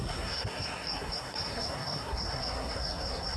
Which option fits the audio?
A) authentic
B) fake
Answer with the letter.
B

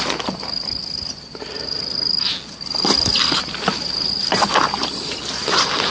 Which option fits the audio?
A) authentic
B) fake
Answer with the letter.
A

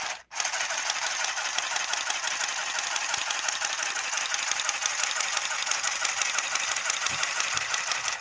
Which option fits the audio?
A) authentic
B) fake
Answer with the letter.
A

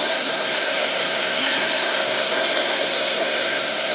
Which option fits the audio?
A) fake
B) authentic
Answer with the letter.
A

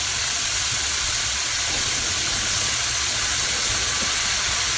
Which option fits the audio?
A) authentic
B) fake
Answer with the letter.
B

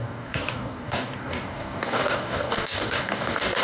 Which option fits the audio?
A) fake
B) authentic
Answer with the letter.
A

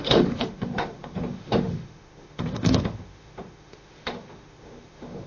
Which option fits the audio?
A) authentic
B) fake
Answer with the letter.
B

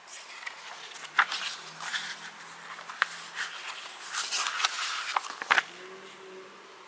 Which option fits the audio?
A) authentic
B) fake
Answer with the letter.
A